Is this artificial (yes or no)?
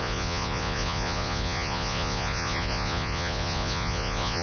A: yes